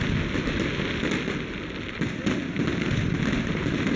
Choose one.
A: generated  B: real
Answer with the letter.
B